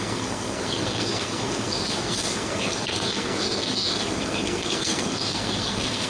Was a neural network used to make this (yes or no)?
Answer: yes